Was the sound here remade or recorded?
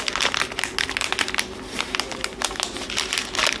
recorded